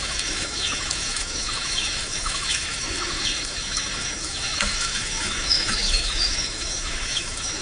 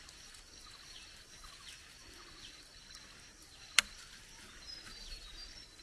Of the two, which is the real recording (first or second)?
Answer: second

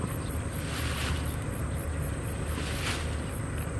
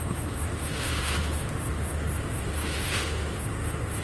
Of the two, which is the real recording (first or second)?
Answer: first